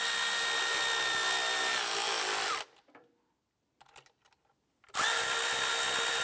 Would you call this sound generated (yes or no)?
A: no